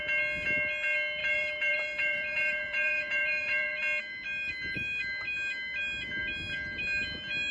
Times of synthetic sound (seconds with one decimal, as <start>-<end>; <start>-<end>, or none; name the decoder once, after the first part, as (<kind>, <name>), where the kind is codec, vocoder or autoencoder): 1.2-3.8 (vocoder, BigVGAN v2)